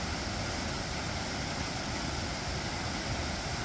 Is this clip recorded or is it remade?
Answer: recorded